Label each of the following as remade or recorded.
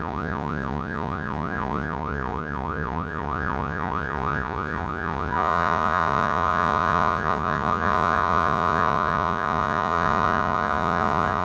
remade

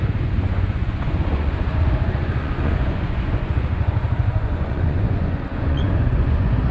remade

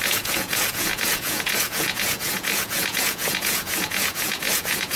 remade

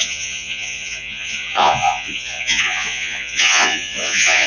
remade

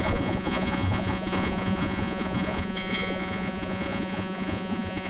remade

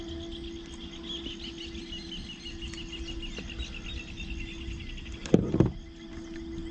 recorded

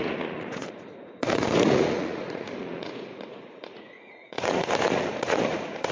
remade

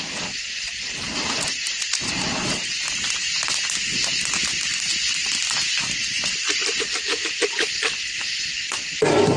recorded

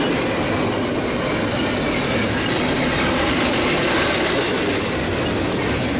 recorded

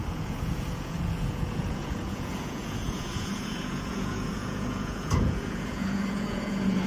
remade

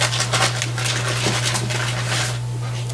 recorded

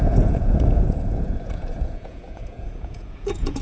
remade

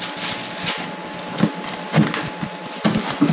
recorded